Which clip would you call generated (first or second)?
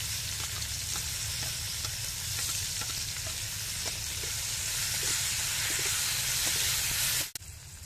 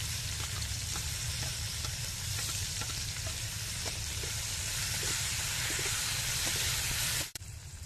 second